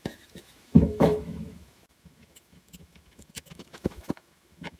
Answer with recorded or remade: remade